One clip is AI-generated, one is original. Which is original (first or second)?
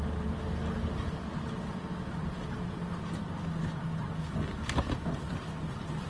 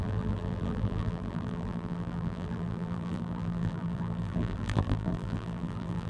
first